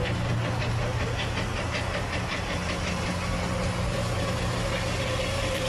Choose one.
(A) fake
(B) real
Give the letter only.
B